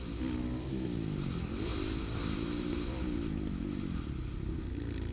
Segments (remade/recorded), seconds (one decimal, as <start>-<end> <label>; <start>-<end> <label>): 0.0-5.1 recorded